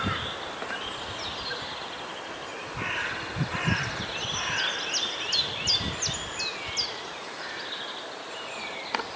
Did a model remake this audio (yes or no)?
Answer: no